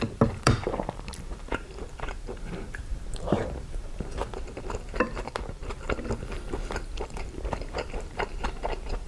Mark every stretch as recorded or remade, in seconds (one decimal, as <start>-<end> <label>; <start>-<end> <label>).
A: 0.0-5.6 remade; 5.6-7.0 recorded; 7.0-9.1 remade